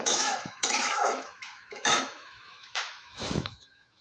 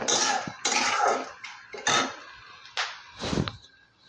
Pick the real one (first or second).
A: second